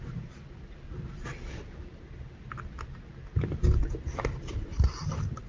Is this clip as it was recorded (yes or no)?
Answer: yes